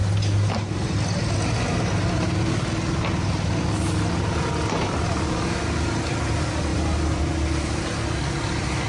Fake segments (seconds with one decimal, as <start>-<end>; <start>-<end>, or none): none